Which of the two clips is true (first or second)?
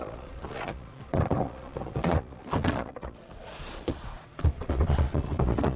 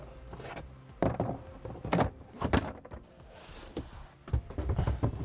second